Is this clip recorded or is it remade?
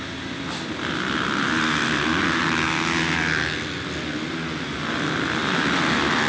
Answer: recorded